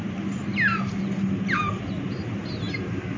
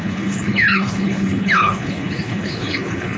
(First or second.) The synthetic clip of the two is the second